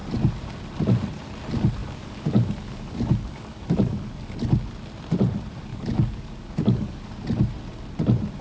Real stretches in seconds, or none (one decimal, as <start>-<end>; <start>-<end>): 0.0-1.8; 4.3-5.7; 7.1-8.4